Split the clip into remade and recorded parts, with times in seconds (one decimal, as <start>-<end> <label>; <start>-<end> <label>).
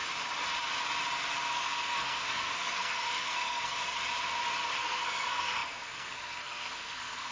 0.0-1.5 recorded; 1.5-4.0 remade; 4.0-4.8 recorded; 4.8-7.3 remade